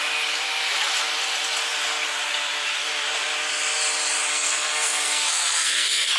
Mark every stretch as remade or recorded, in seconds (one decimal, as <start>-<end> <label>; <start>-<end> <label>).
0.0-4.3 recorded; 4.3-6.2 remade